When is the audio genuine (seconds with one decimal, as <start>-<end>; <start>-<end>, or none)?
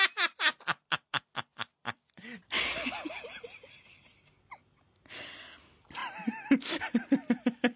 0.0-0.5; 1.2-1.8; 4.0-6.0